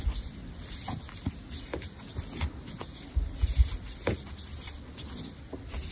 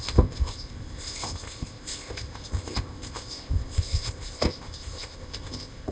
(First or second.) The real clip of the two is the first